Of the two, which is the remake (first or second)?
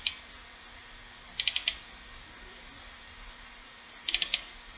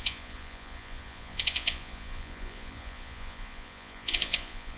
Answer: second